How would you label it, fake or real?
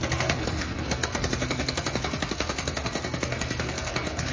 fake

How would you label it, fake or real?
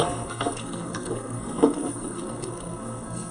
fake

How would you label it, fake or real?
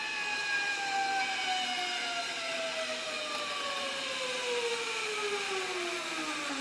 real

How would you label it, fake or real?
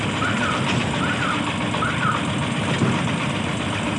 real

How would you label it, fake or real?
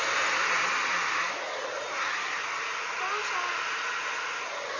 real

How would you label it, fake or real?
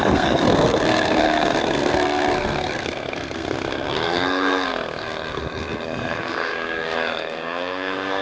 fake